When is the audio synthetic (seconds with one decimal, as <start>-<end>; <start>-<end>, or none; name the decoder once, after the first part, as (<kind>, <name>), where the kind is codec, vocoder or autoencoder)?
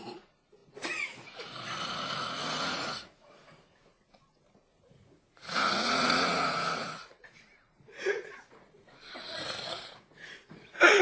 0.0-11.0 (vocoder, Vocos)